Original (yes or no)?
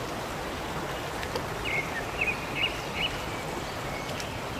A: yes